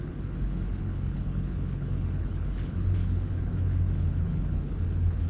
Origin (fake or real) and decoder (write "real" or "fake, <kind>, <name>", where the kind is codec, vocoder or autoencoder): fake, codec, HILCodec